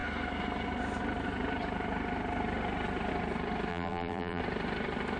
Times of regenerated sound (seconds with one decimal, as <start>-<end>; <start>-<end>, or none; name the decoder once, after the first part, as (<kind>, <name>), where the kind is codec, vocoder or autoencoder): 3.7-4.4 (vocoder, BigVGAN v2)